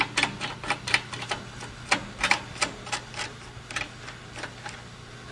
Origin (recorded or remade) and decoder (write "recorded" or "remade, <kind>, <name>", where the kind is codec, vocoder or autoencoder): remade, vocoder, BigVGAN v2